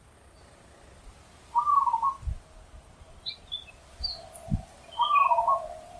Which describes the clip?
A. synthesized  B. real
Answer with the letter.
B